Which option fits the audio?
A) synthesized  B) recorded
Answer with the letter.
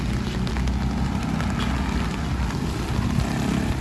B